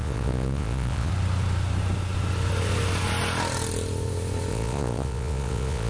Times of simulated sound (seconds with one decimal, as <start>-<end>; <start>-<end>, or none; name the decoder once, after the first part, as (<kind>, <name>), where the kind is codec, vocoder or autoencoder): 0.0-1.1 (vocoder, Vocos); 4.5-5.9